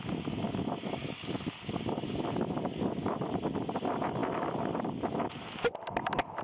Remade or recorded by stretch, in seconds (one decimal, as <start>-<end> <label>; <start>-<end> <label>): 0.0-6.4 recorded